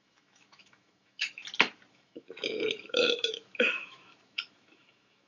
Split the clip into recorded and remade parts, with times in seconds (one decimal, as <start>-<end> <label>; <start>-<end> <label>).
0.0-1.4 remade; 1.4-1.9 recorded; 1.9-5.3 remade